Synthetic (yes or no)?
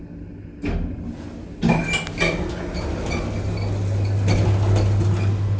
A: no